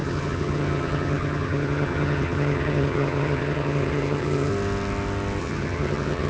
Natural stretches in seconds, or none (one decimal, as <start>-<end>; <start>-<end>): 4.5-5.4